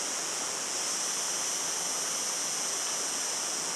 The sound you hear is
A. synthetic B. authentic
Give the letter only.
B